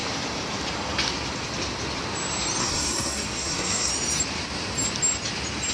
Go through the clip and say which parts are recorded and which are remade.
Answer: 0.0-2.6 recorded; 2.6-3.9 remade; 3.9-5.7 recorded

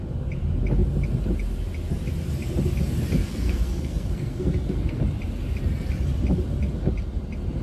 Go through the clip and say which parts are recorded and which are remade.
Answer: 0.0-3.2 recorded; 3.2-5.0 remade; 5.0-7.6 recorded

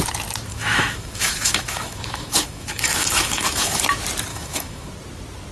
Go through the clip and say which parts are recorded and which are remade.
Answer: 0.0-0.5 recorded; 0.5-3.8 remade; 3.8-4.3 recorded; 4.3-4.9 remade; 4.9-5.5 recorded

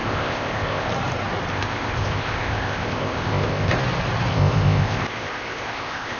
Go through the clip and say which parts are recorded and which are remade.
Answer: 0.0-0.9 remade; 0.9-1.5 recorded; 1.5-3.7 remade; 3.7-4.3 recorded; 4.3-6.2 remade